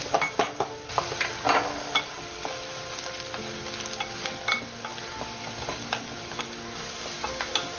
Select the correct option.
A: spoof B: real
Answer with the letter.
B